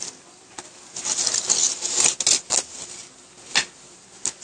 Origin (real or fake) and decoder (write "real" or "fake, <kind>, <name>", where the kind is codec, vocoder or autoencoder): real